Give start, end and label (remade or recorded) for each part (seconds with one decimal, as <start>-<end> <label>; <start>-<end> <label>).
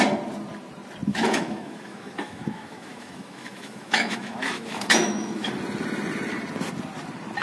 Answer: 0.0-1.1 recorded; 1.1-5.5 remade; 5.5-7.4 recorded